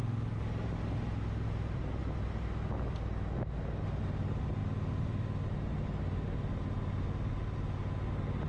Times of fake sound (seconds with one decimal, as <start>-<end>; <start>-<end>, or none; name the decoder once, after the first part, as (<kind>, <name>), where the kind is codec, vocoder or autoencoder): none